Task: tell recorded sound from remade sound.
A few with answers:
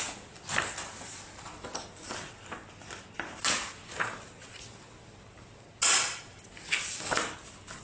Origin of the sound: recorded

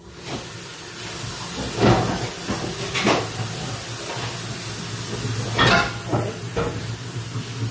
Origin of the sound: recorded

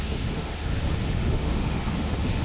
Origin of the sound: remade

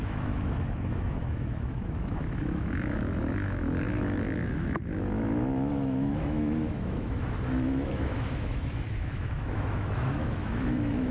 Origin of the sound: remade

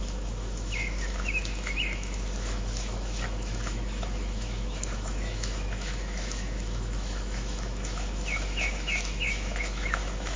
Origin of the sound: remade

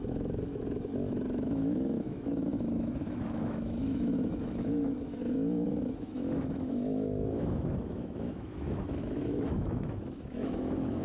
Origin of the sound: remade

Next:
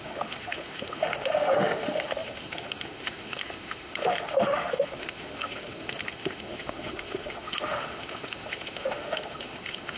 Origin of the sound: remade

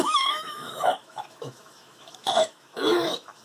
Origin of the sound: remade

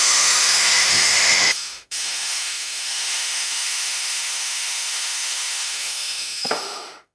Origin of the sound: remade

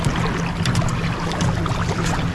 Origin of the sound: recorded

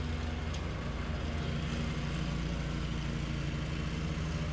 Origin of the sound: recorded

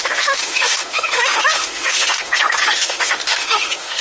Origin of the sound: remade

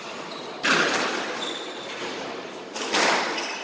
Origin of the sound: recorded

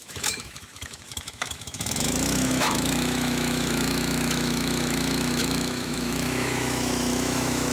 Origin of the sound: remade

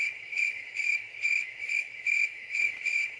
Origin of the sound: remade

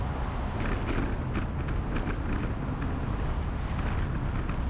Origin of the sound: recorded